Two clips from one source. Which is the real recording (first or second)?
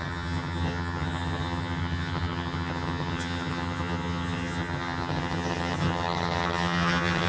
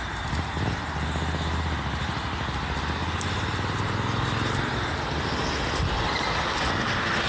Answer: second